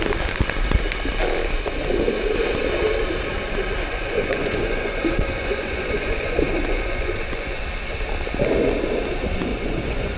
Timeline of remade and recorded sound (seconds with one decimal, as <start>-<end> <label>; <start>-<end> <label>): 0.0-3.9 recorded; 3.9-7.6 remade; 7.6-9.5 recorded; 9.5-10.2 remade